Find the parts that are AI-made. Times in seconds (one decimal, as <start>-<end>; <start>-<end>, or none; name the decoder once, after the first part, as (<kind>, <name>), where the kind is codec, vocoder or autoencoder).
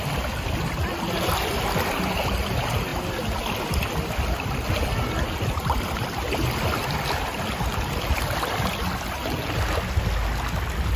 none